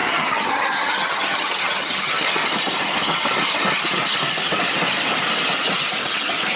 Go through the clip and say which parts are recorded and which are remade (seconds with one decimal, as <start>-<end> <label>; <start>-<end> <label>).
0.0-2.4 remade; 2.4-6.6 recorded